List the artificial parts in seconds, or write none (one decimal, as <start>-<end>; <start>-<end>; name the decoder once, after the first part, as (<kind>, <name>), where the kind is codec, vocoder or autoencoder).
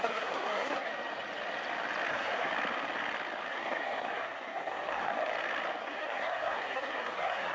0.0-0.9 (codec, SNAC); 2.1-2.5; 3.5-5.3; 5.8-7.5